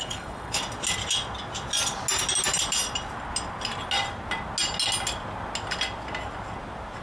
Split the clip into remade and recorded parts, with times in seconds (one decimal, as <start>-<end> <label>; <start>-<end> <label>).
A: 0.0-0.6 remade; 0.6-7.0 recorded